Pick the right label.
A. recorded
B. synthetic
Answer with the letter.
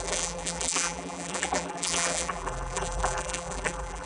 B